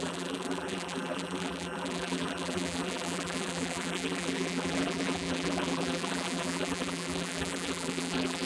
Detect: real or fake fake